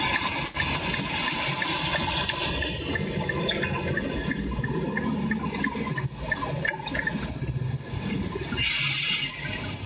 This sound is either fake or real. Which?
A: real